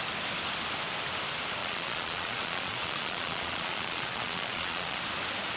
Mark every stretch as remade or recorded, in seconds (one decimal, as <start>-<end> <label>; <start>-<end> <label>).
0.0-1.6 recorded; 1.6-5.0 remade; 5.0-5.6 recorded